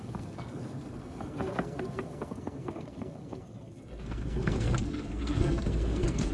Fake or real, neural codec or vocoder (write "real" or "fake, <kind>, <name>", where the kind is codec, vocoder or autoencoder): fake, codec, SNAC